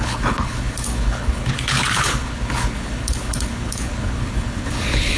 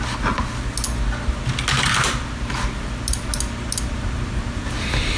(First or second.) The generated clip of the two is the first